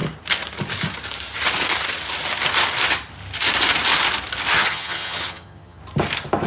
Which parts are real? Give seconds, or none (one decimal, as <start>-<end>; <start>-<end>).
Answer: 0.0-4.5; 5.8-6.5